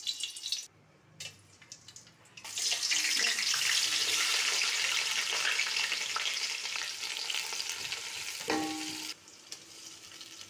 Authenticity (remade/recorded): recorded